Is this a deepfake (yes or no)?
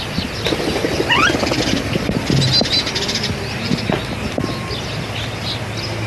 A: no